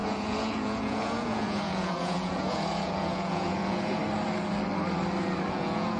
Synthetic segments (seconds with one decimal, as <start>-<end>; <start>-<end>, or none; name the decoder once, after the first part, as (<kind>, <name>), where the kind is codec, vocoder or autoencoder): 0.0-4.0 (vocoder, Vocos); 5.5-6.0